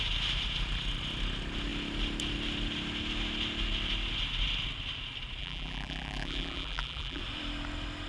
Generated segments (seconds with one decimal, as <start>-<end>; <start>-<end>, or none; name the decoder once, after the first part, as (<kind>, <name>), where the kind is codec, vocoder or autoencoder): 5.4-7.2 (vocoder, BigVGAN v2)